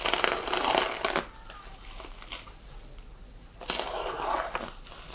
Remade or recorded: recorded